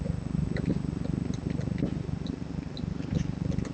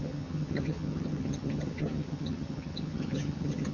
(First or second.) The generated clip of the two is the second